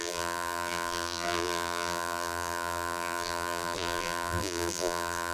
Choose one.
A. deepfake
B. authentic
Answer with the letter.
A